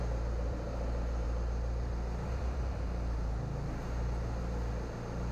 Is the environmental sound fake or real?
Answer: real